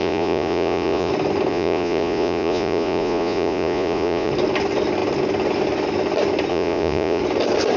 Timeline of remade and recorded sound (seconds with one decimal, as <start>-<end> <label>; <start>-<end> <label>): 0.0-1.1 remade; 1.1-1.5 recorded; 1.5-4.3 remade; 4.3-6.5 recorded; 6.5-7.2 remade; 7.2-7.8 recorded